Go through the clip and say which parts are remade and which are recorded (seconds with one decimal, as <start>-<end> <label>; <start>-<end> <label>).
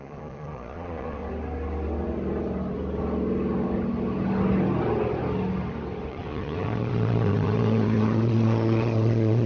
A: 0.0-1.2 remade; 1.2-6.1 recorded; 6.1-9.5 remade